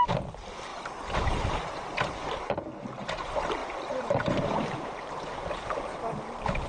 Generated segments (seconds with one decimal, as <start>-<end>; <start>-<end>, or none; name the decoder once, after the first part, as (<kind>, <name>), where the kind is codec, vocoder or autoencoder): none

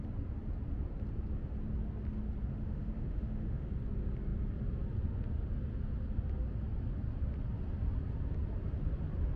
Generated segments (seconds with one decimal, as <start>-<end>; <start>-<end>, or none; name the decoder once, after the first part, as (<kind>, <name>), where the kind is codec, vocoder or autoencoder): 2.5-3.7 (autoencoder, DAC-VAE)